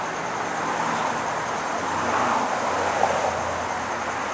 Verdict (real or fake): real